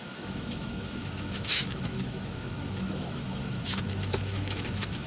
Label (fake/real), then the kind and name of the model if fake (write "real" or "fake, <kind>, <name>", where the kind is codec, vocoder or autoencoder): fake, autoencoder, DAC-VAE